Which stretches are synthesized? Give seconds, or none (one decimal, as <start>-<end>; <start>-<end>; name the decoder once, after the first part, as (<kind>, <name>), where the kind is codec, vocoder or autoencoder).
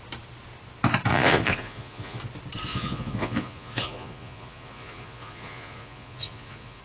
1.1-2.2 (vocoder, Vocos); 2.7-6.8